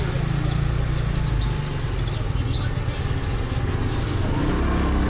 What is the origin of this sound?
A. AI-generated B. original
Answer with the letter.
B